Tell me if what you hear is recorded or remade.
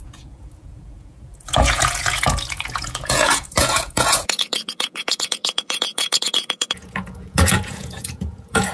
remade